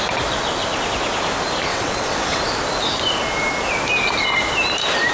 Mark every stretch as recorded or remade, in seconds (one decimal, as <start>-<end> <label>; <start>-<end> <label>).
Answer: 0.0-1.7 recorded; 1.7-2.4 remade; 2.4-5.1 recorded